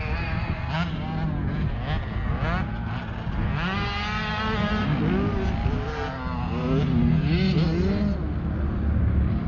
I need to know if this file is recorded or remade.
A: recorded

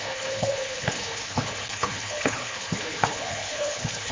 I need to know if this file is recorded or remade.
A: remade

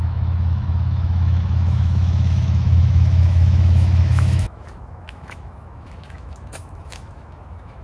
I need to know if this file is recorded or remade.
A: remade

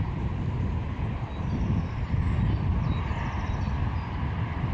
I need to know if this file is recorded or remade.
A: recorded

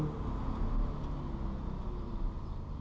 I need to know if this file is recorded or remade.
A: recorded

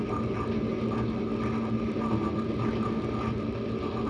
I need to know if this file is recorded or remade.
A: recorded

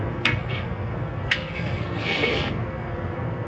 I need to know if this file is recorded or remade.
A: remade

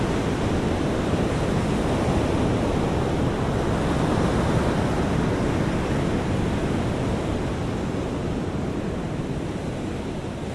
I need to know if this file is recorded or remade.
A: recorded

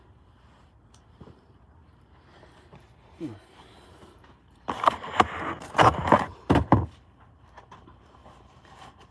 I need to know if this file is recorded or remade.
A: remade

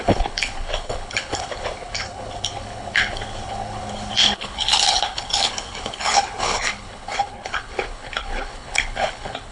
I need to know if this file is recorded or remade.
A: remade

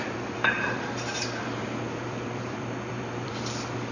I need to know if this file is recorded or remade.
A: remade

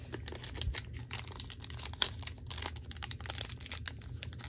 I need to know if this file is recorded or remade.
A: recorded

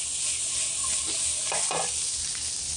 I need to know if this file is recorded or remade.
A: recorded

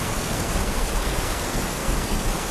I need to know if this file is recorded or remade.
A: remade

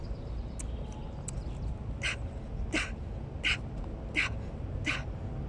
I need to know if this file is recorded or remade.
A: recorded